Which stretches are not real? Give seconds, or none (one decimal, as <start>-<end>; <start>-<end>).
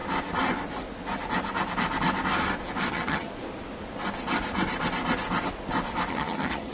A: 2.9-3.3; 6.1-6.7